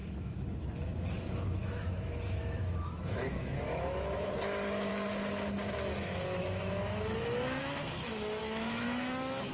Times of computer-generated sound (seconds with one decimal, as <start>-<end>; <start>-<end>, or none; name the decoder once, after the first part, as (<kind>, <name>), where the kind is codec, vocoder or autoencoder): 0.0-4.9 (autoencoder, DAC-VAE); 6.4-9.5